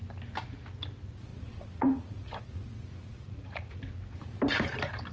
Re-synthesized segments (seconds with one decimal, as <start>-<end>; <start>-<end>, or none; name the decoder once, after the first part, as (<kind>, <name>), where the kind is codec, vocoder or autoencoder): 1.3-3.8 (vocoder, Vocos)